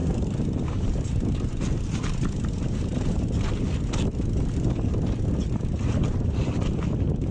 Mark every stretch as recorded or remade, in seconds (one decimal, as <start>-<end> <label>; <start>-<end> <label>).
0.0-2.9 recorded; 2.9-3.5 remade; 3.5-7.3 recorded